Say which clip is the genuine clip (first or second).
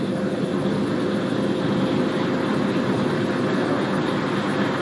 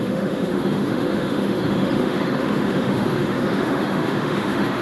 first